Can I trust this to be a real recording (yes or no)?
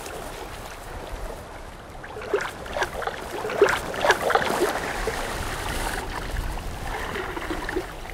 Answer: no